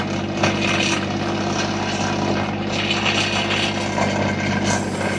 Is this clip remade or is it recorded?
recorded